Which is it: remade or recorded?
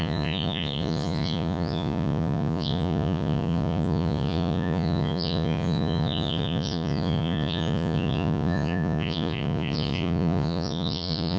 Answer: remade